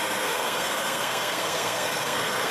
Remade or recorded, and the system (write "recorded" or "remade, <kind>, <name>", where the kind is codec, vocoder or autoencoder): remade, codec, SNAC